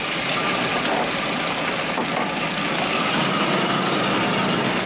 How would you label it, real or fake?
real